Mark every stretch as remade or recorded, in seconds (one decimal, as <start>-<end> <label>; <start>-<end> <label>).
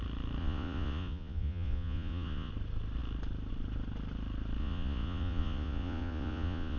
0.0-0.4 recorded; 0.4-2.5 remade; 2.5-4.6 recorded; 4.6-6.8 remade